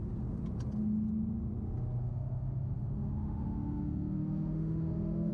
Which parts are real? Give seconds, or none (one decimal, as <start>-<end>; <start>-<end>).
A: 0.0-2.0